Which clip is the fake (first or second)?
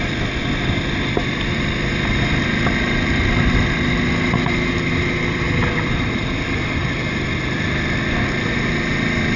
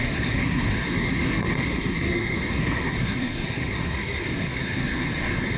second